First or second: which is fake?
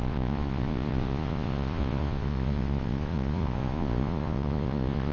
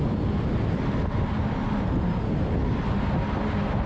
first